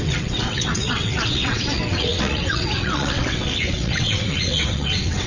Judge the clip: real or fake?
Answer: fake